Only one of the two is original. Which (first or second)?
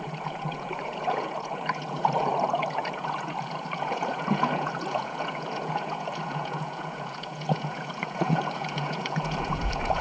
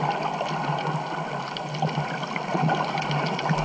second